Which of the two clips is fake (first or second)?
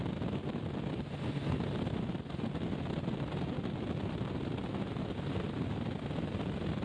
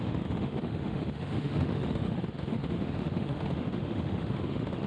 second